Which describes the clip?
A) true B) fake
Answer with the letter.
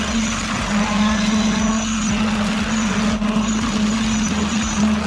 A